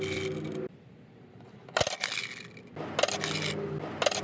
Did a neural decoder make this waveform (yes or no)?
no